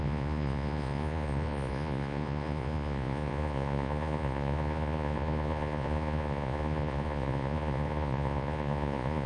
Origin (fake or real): fake